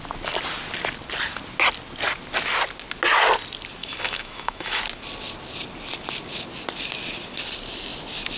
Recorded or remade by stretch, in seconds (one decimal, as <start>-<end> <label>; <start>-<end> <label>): 0.0-3.8 recorded; 3.8-4.8 remade; 4.8-8.4 recorded